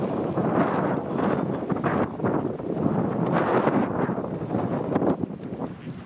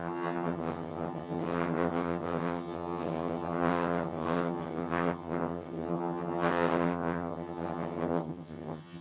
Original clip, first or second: first